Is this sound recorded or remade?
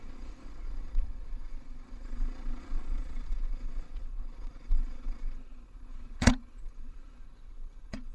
remade